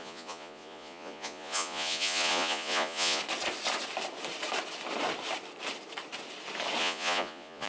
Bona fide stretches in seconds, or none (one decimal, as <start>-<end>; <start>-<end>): 3.2-6.8

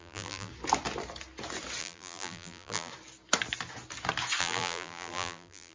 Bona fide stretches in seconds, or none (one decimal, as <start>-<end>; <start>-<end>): 0.5-1.8; 2.9-4.4

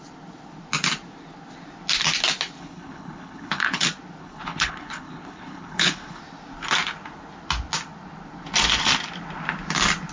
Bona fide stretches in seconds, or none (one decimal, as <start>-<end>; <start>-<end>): 0.0-2.6; 3.8-4.2; 6.2-10.1

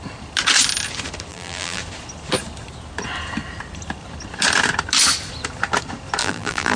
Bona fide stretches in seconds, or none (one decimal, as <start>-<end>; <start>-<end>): 0.0-1.3; 1.8-6.2

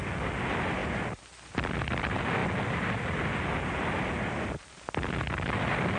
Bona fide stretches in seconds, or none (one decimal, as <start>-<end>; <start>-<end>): 0.0-6.0

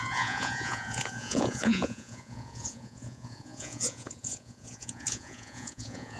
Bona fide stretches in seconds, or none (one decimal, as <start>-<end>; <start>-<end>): none

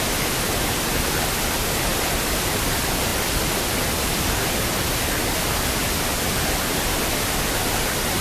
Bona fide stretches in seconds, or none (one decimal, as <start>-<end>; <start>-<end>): 0.0-8.2